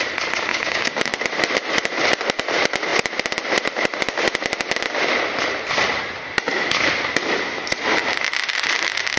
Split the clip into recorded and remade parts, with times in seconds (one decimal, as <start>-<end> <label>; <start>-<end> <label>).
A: 0.0-0.5 recorded; 0.5-1.0 remade; 1.0-9.2 recorded